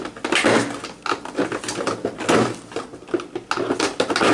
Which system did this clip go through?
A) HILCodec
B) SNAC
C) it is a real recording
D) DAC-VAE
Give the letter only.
C